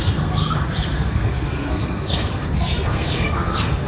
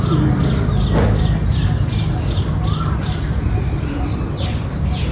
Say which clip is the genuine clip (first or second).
second